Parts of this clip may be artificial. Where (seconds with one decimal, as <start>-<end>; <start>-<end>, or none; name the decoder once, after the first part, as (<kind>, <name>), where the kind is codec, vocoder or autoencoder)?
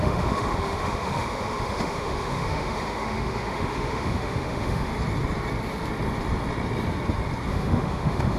0.0-4.9 (autoencoder, DAC-VAE); 7.5-8.4